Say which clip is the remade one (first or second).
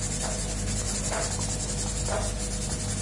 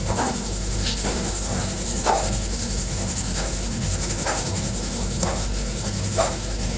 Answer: second